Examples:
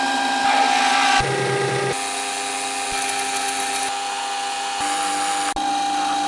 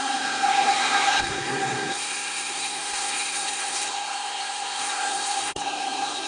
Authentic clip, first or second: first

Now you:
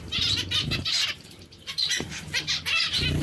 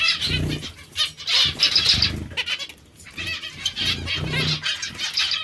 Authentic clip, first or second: second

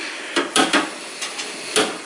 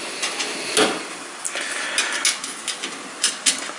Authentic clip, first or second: second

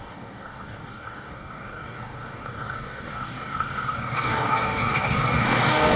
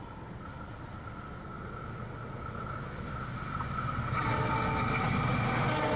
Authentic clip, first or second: second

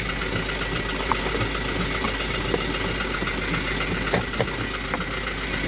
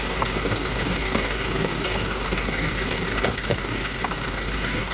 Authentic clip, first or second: first